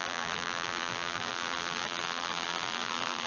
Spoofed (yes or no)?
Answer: yes